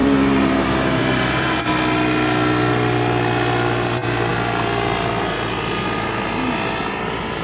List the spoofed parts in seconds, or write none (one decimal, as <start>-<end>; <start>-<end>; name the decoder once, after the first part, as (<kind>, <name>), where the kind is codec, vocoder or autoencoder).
0.0-1.7 (vocoder, BigVGAN v2)